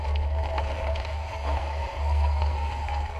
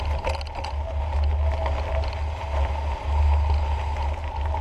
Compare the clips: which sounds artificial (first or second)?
first